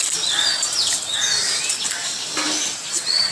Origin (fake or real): real